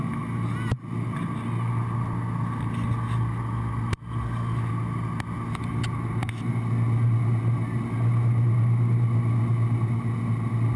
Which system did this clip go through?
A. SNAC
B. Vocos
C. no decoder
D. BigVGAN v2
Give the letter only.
C